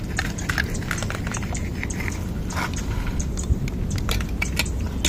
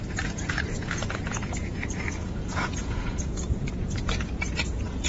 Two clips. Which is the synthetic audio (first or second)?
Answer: second